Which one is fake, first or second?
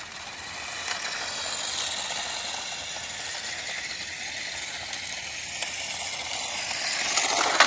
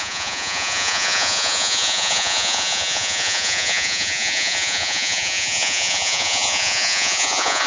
second